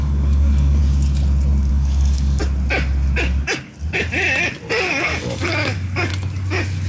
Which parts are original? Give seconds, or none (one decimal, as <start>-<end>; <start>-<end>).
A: 0.8-1.7; 2.4-4.9; 6.1-6.9

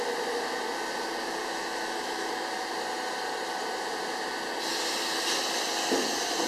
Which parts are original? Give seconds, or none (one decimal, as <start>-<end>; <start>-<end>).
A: 0.0-1.4; 2.3-6.5

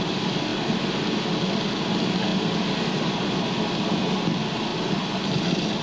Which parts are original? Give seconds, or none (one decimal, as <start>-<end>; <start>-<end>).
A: 0.0-5.8

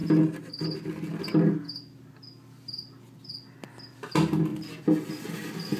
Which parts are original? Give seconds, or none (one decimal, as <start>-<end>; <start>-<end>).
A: 0.0-5.8

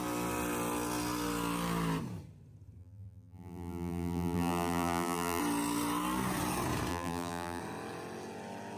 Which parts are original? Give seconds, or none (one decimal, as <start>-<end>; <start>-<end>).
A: 0.0-2.8; 5.4-6.9; 7.6-8.8

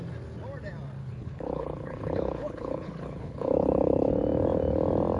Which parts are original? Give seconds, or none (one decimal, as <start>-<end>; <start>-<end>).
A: 0.0-1.0; 4.1-5.2